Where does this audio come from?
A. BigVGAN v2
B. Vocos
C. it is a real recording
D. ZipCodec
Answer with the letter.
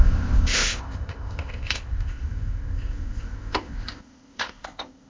D